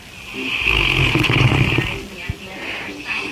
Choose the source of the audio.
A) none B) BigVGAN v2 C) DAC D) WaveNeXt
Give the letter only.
A